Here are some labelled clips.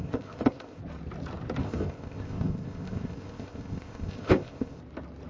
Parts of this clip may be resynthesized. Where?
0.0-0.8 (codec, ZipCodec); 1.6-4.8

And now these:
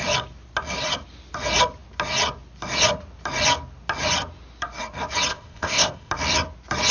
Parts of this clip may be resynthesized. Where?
5.3-6.1 (codec, ZipCodec)

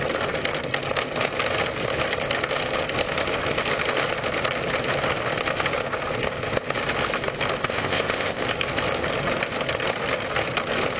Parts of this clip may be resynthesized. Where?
7.6-8.4 (codec, ZipCodec)

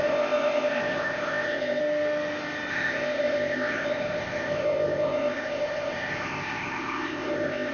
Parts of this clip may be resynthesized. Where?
0.0-1.8 (codec, ZipCodec); 2.7-7.7

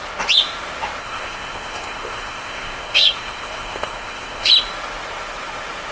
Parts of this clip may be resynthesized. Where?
1.0-4.5 (codec, ZipCodec)

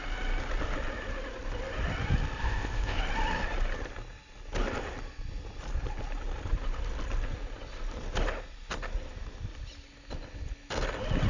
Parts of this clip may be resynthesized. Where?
2.4-3.0 (codec, ZipCodec)